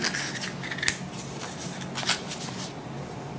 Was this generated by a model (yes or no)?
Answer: no